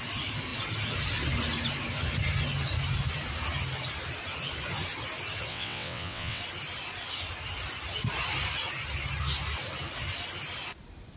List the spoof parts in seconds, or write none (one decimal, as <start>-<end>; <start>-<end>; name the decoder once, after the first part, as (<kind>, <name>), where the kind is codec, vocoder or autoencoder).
5.5-6.4 (vocoder, WaveNeXt)